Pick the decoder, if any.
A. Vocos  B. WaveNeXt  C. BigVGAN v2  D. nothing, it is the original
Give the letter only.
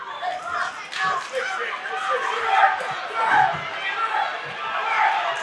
D